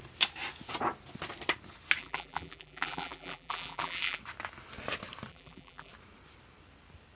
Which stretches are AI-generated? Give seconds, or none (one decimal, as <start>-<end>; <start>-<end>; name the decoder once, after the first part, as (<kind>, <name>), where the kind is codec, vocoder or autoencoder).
2.0-4.2 (vocoder, BigVGAN v2); 5.3-5.9